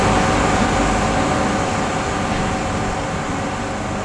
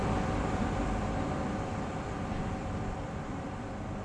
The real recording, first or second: first